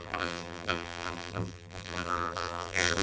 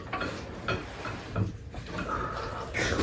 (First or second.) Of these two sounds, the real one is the second